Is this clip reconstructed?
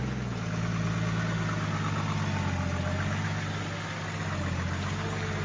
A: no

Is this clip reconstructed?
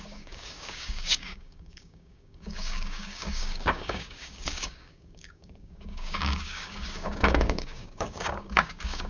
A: yes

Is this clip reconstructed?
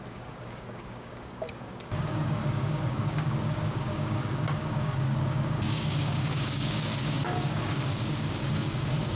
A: yes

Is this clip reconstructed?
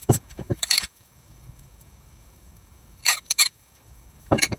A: yes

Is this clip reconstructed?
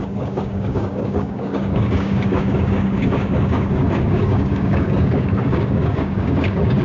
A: yes